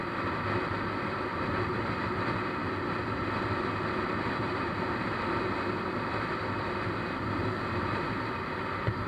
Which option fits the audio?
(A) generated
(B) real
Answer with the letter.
B